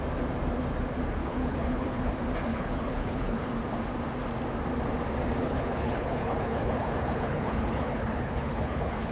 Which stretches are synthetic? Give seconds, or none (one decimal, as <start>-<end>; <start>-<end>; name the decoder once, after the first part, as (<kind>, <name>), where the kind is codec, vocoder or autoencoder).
1.2-2.1 (codec, HILCodec); 2.5-3.5; 5.4-9.1